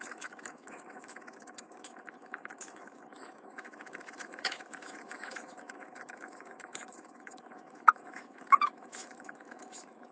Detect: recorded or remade remade